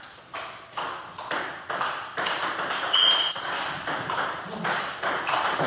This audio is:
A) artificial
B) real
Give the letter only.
A